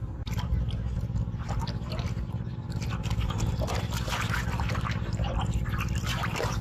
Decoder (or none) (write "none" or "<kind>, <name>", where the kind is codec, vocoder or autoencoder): none